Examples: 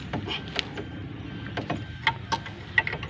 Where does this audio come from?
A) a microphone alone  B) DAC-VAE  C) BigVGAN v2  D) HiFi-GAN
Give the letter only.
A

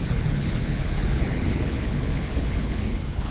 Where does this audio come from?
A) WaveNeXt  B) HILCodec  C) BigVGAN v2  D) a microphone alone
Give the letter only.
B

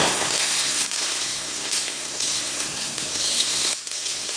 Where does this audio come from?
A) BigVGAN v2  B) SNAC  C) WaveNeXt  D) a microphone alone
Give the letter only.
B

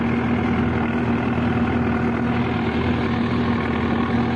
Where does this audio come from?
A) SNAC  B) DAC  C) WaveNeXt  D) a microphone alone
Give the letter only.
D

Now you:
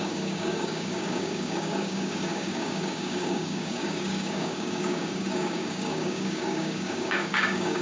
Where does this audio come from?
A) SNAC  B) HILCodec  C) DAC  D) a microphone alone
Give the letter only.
C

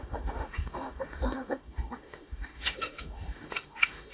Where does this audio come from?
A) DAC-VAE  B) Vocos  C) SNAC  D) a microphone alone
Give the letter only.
A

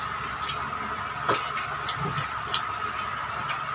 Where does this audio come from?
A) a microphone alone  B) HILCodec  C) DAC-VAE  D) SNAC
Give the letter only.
A